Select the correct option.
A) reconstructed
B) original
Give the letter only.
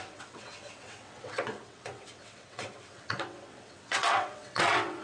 A